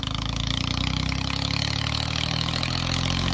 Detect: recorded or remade remade